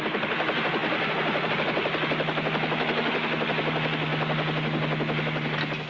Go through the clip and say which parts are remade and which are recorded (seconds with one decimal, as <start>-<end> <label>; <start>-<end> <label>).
0.0-5.9 recorded